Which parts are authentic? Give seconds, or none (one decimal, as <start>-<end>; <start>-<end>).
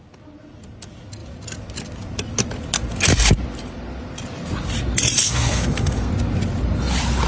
0.0-5.2; 6.1-7.3